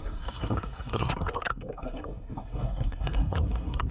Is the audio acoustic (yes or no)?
no